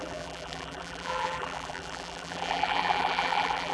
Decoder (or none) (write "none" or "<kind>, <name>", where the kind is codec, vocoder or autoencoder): vocoder, BigVGAN v2